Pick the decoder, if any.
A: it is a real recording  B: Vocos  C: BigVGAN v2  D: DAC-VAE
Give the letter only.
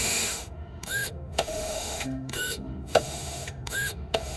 D